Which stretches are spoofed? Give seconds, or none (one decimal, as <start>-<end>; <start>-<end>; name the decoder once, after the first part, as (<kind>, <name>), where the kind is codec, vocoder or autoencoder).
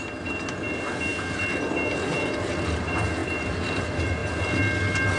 none